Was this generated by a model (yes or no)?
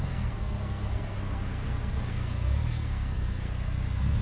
yes